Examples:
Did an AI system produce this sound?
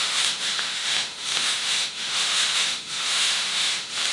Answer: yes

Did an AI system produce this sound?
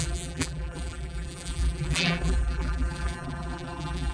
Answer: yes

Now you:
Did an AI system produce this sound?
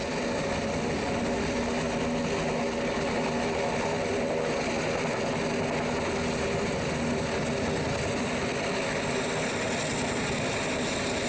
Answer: no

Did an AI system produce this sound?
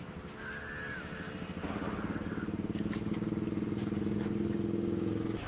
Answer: no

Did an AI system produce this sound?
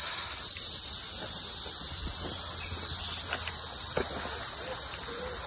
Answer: no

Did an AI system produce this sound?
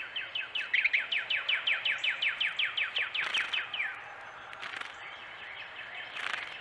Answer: no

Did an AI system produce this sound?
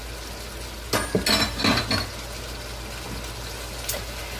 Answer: no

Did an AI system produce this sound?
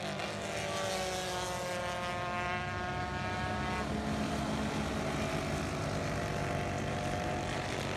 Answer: no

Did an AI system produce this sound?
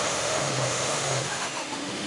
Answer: yes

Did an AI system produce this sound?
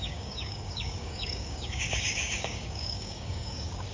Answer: yes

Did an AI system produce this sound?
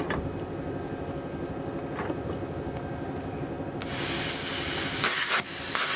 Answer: no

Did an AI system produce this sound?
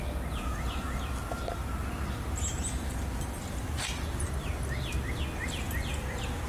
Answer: no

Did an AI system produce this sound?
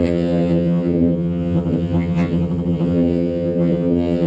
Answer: yes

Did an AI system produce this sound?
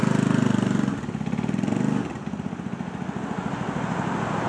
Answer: no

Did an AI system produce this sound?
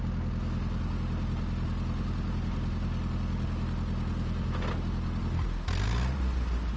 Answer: no